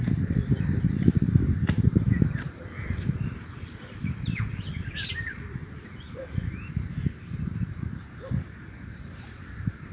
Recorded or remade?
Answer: remade